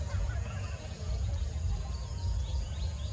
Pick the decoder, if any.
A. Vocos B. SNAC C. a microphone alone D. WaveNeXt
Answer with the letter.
A